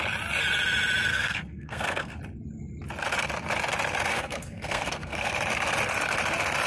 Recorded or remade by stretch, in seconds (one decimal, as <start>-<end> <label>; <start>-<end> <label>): 0.0-1.1 recorded; 1.1-2.2 remade; 2.2-4.1 recorded; 4.1-5.3 remade; 5.3-6.7 recorded